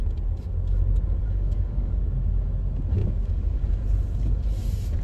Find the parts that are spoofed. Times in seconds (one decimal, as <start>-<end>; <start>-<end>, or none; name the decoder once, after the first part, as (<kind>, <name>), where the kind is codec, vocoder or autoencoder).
1.2-1.9 (codec, DAC); 3.0-3.6